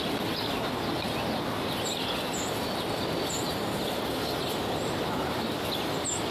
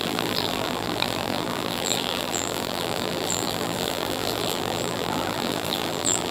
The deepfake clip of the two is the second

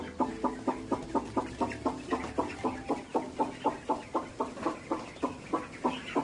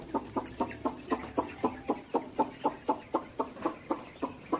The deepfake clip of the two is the second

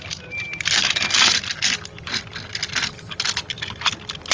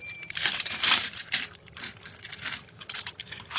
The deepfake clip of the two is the second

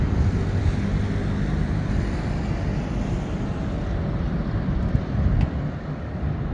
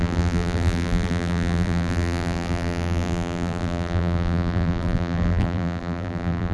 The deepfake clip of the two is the second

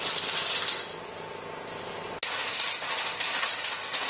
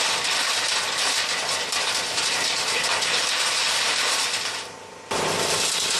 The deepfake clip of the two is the second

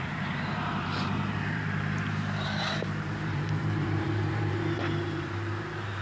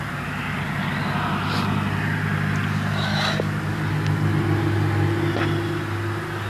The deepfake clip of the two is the first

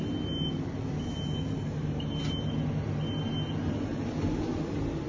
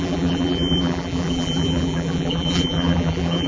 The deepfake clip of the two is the second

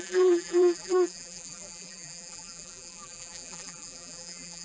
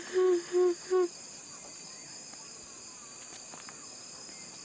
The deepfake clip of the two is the first